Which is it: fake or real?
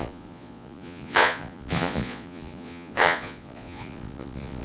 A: fake